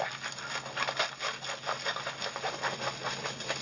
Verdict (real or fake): real